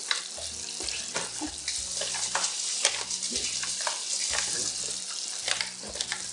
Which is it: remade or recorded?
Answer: recorded